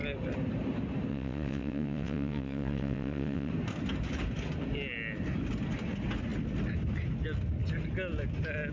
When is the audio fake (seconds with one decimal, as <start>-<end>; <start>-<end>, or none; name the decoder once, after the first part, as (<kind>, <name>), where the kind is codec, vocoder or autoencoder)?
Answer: 1.1-3.5 (vocoder, WaveNeXt)